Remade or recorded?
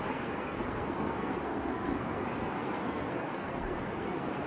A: remade